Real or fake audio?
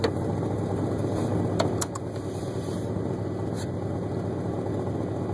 fake